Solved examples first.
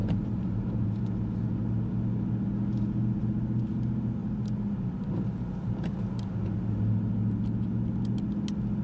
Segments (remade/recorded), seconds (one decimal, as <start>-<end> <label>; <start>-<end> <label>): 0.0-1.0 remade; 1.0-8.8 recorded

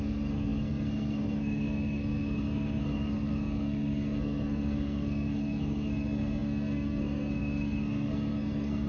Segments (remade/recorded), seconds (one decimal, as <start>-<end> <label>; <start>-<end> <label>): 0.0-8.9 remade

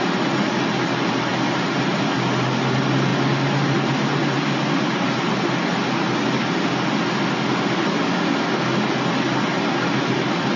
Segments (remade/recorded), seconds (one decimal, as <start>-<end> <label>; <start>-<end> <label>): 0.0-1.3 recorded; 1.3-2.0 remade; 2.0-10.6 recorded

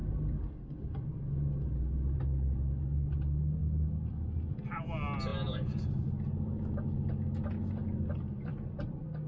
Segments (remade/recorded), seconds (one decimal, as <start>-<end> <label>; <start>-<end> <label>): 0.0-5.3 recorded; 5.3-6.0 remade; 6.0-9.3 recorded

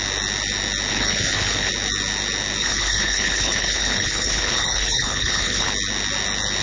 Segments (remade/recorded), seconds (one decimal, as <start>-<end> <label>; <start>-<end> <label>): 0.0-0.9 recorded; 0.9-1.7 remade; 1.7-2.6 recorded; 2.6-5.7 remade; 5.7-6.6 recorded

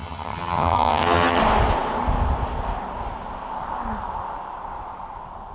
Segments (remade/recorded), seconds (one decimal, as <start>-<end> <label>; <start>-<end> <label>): 0.0-1.4 remade; 1.4-5.5 recorded

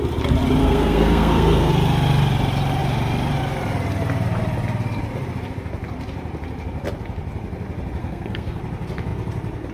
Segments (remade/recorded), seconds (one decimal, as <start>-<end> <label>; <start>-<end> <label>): 0.0-0.6 recorded; 0.6-1.7 remade; 1.7-8.0 recorded; 8.0-8.6 remade; 8.6-9.7 recorded

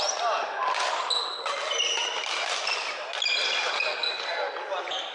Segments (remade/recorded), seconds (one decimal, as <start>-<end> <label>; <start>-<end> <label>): 0.0-5.1 recorded